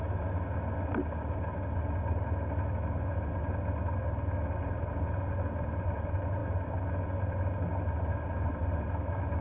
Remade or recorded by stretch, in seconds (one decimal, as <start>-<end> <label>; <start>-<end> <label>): 0.0-9.4 recorded